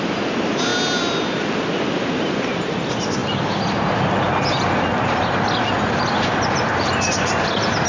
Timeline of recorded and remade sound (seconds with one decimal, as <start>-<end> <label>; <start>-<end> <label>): 0.0-7.9 recorded